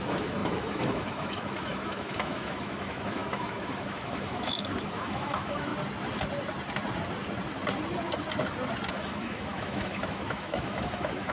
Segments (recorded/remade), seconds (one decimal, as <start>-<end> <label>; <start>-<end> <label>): 0.0-5.7 remade; 5.7-8.9 recorded; 8.9-11.3 remade